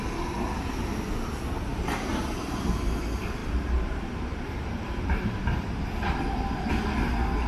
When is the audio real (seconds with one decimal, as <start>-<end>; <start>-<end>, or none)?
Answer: 0.0-1.7; 2.7-3.4; 6.7-7.5